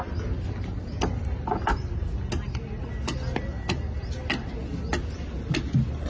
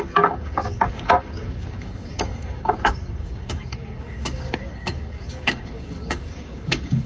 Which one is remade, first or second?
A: second